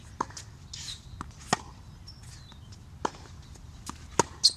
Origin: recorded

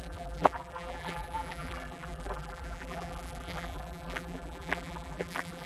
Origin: remade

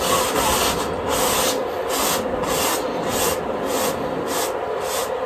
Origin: recorded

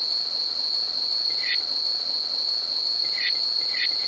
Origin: recorded